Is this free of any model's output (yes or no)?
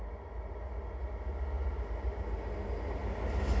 yes